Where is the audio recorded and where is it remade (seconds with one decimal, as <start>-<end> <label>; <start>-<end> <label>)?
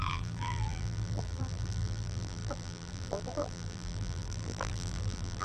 0.0-5.4 remade